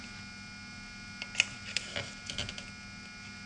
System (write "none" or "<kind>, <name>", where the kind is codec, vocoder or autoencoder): none